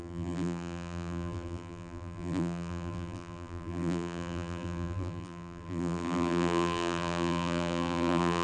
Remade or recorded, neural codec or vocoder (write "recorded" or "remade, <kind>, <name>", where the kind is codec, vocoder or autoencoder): remade, vocoder, BigVGAN v2